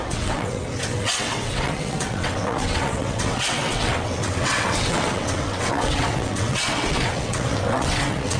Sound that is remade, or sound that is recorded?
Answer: remade